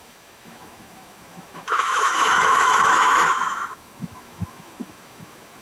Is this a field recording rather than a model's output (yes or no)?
no